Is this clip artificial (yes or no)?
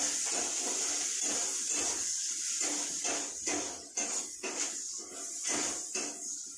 no